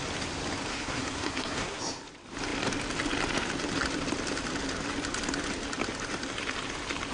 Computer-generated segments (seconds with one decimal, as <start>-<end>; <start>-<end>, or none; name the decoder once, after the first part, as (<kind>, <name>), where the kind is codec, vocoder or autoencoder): 0.7-1.8 (codec, SNAC)